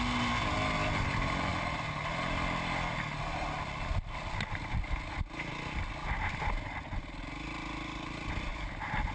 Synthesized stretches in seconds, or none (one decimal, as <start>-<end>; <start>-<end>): none